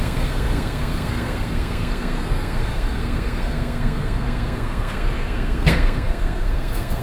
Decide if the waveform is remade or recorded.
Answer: remade